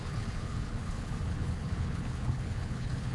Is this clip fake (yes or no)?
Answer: yes